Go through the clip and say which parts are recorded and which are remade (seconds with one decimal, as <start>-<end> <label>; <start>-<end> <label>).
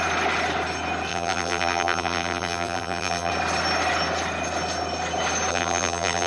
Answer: 0.0-1.1 recorded; 1.1-3.3 remade; 3.3-5.5 recorded; 5.5-6.3 remade